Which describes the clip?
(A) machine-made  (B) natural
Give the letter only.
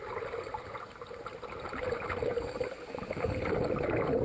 B